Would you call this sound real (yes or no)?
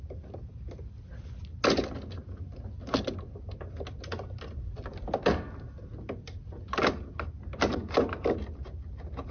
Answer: yes